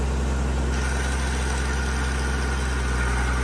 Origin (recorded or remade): recorded